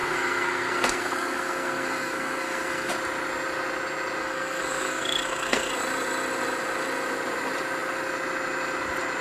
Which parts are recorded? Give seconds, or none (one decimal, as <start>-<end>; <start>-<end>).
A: 2.9-4.2; 5.7-9.2